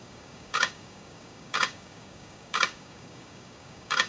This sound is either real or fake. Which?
fake